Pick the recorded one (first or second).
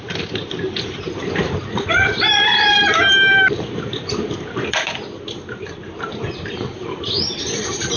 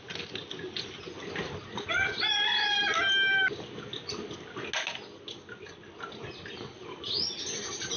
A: second